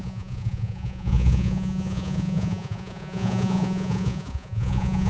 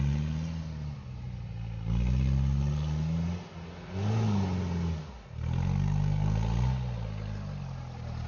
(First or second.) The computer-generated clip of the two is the first